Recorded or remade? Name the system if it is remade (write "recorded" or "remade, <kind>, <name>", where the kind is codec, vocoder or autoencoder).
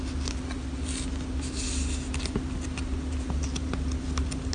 recorded